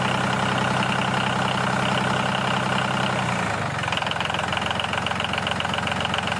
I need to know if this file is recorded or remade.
recorded